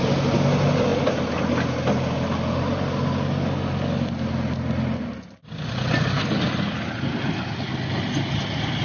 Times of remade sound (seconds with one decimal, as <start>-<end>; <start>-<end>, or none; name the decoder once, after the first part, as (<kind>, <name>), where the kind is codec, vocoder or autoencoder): none